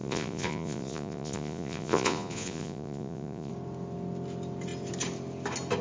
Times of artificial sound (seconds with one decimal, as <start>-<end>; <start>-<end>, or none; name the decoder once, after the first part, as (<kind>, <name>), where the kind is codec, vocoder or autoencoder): 0.0-3.5 (vocoder, Vocos)